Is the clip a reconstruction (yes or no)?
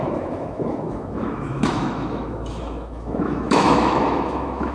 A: yes